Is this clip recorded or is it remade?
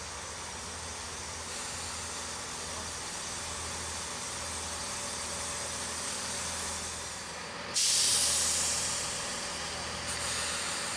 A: recorded